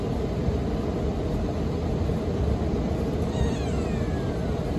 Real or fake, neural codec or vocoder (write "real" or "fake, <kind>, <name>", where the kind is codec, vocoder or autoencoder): real